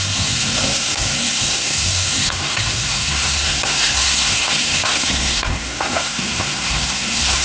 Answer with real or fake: fake